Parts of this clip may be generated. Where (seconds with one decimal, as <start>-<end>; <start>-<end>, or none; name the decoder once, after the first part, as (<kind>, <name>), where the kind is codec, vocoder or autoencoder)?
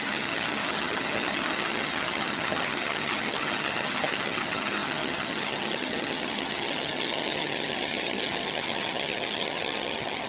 0.0-10.3 (vocoder, HiFi-GAN)